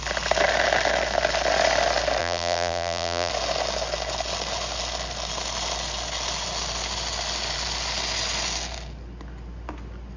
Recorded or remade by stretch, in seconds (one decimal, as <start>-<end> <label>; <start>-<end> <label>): 0.0-2.2 recorded; 2.2-3.3 remade; 3.3-10.2 recorded